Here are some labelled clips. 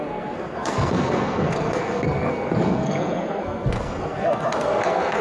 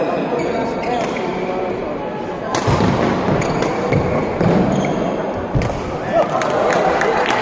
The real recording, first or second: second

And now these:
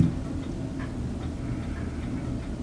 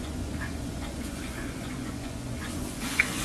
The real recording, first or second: first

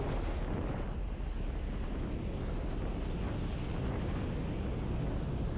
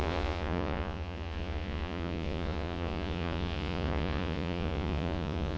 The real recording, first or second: first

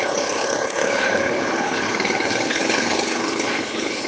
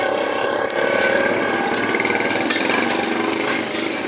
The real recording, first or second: second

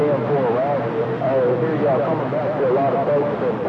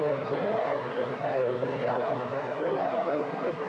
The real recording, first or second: first